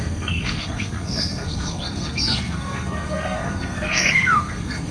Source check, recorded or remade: remade